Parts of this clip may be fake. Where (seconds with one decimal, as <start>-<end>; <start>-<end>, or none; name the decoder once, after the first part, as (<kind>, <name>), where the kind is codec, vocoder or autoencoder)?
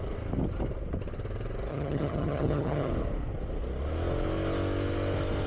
1.7-2.9 (vocoder, HiFi-GAN)